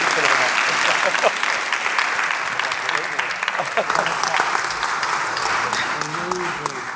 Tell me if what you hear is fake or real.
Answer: real